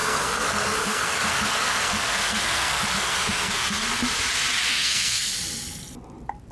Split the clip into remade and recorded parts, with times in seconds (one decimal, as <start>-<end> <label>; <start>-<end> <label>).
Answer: 0.0-3.9 remade; 3.9-4.7 recorded; 4.7-5.3 remade; 5.3-6.5 recorded